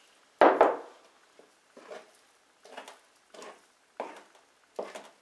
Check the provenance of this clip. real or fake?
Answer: real